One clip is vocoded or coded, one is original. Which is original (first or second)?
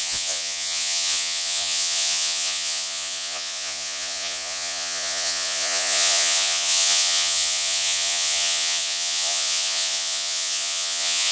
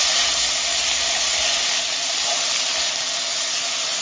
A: second